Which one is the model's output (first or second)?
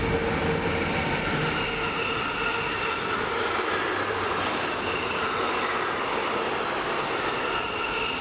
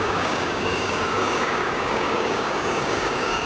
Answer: second